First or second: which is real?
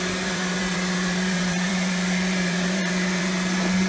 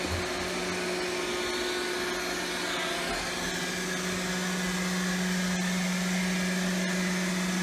second